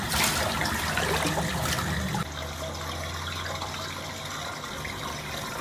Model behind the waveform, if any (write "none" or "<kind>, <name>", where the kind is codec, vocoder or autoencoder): none